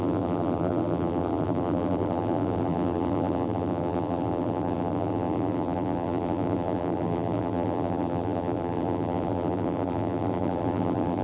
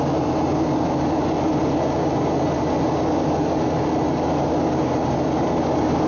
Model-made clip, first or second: first